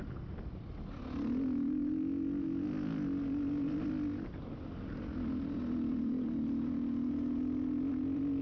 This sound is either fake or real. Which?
real